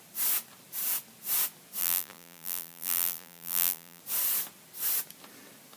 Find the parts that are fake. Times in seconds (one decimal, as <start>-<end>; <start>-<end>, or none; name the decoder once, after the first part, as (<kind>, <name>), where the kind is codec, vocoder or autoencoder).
1.8-4.0 (vocoder, BigVGAN v2)